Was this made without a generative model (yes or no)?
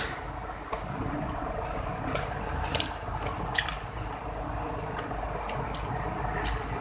yes